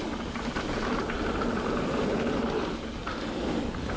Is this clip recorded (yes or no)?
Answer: yes